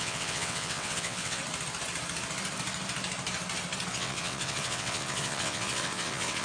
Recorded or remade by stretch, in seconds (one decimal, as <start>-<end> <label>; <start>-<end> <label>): 0.0-1.4 remade; 1.4-3.9 recorded; 3.9-6.4 remade